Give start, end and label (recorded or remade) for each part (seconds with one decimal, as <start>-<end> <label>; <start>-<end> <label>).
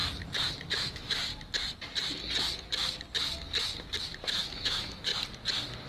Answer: 0.0-0.7 recorded; 0.7-1.3 remade; 1.3-4.2 recorded; 4.2-5.1 remade; 5.1-5.9 recorded